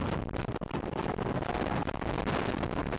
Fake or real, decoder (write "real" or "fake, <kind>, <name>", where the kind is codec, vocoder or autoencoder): real